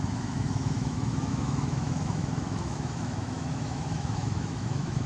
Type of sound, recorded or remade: remade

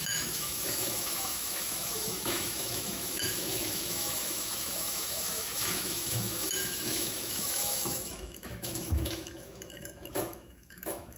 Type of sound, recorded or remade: remade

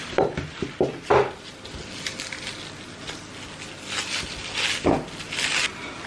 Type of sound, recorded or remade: recorded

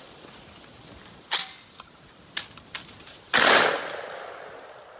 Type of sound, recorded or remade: recorded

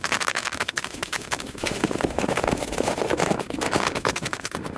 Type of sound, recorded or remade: remade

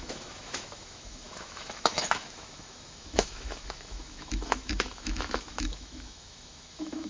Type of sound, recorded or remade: remade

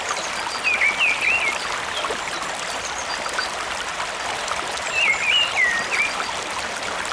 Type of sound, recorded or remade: recorded